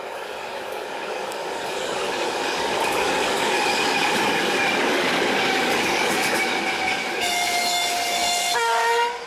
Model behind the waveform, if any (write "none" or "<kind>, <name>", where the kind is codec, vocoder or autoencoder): codec, DAC